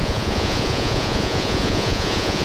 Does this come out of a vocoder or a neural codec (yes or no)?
yes